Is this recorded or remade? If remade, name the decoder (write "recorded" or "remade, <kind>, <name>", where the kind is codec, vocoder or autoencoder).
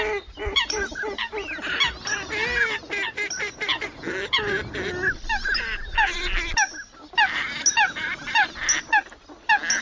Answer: recorded